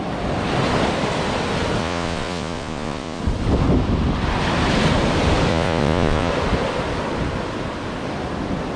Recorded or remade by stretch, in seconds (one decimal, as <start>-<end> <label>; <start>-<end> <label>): 0.0-1.8 recorded; 1.8-3.2 remade; 3.2-5.5 recorded; 5.5-6.3 remade; 6.3-8.8 recorded